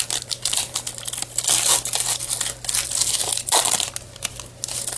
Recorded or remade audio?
recorded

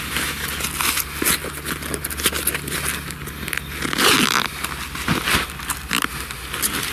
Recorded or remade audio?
recorded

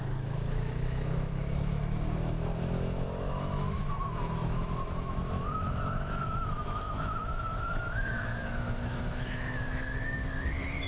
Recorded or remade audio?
remade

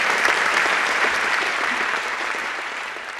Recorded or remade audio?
remade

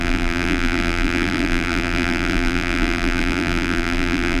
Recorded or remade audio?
remade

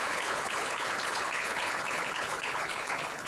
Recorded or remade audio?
remade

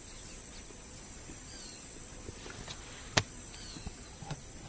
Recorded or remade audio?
recorded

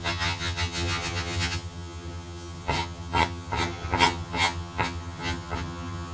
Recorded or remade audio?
remade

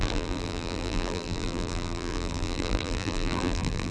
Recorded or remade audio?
remade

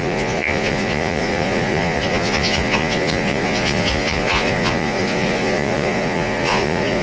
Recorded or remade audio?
remade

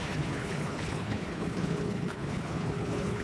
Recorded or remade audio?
remade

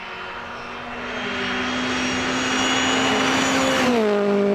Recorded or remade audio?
recorded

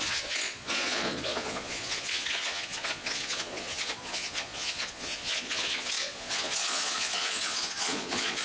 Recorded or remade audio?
remade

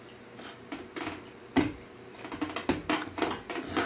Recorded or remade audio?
recorded